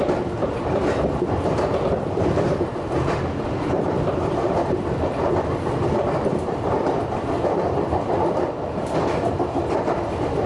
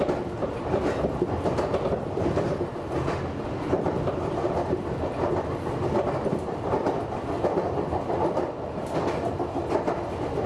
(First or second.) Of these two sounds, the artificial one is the first